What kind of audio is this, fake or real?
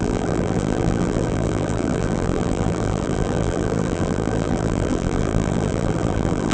fake